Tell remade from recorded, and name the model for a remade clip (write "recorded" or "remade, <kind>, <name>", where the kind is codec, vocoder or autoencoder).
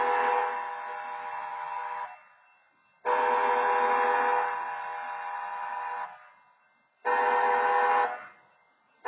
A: recorded